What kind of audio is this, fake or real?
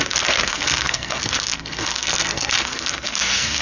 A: fake